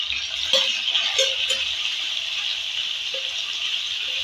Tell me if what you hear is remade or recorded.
recorded